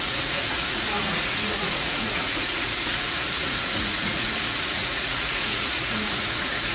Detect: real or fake fake